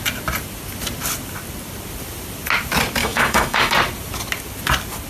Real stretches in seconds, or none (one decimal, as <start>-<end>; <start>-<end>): 0.0-3.0; 3.7-5.1